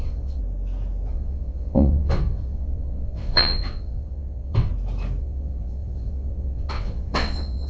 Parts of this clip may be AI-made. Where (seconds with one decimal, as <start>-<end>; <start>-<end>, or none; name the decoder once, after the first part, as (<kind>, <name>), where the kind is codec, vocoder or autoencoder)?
0.0-0.4 (vocoder, WaveNeXt); 1.1-4.7; 5.2-7.7